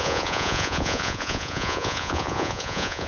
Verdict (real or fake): fake